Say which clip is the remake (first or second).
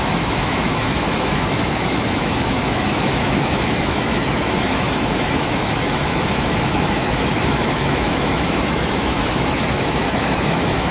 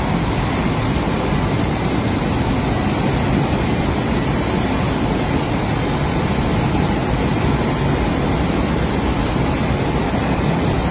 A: first